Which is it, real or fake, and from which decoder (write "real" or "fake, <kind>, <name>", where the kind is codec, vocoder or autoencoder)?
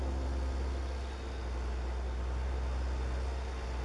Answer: real